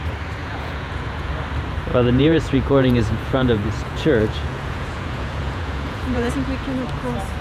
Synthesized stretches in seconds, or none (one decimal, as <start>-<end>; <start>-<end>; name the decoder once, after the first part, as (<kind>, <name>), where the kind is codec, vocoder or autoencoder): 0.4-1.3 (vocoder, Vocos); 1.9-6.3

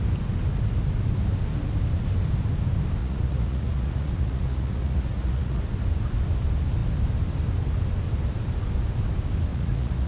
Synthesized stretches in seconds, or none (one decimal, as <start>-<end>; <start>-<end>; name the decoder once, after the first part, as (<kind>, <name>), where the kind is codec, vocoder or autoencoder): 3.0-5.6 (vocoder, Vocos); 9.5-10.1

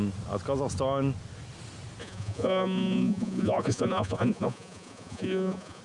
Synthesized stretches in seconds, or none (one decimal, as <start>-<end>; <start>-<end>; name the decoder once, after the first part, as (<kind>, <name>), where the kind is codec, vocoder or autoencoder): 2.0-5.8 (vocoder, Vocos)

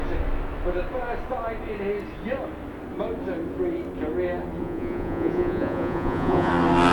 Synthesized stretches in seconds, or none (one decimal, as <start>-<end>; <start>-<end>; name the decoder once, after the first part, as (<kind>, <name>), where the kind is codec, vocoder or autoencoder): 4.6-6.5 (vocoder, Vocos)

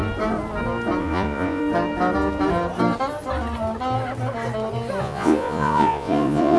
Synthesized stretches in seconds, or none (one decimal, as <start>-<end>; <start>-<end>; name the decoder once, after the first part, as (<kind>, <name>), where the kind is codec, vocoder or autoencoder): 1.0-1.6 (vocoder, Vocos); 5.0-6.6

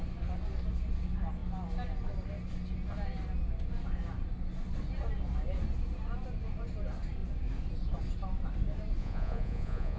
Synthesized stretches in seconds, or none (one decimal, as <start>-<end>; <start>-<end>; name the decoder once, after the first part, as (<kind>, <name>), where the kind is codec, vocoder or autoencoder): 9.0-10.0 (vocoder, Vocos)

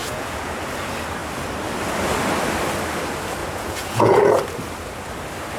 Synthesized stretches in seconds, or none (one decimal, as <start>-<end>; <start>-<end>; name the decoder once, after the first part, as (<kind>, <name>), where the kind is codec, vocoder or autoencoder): 0.0-0.6 (vocoder, Vocos); 3.4-4.3